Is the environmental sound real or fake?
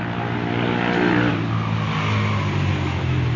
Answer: real